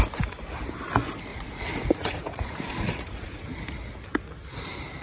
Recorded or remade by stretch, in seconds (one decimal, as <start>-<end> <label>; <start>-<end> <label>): 0.0-1.3 recorded; 1.3-3.4 remade; 3.4-5.0 recorded